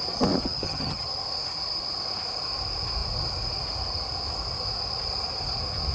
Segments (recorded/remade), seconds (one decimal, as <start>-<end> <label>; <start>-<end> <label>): 0.0-0.4 recorded; 0.4-1.2 remade; 1.2-5.9 recorded